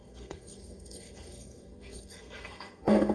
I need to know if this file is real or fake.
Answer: fake